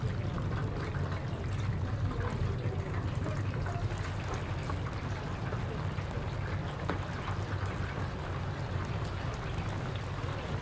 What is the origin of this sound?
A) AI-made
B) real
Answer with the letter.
B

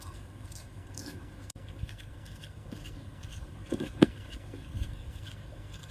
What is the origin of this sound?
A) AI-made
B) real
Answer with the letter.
A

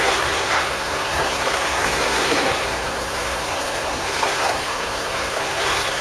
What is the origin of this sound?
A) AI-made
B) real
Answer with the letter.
A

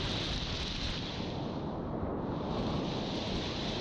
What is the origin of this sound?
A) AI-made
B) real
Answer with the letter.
B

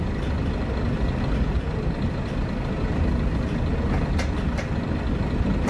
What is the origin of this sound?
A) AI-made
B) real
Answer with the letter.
B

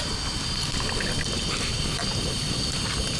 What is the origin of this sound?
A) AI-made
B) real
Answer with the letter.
B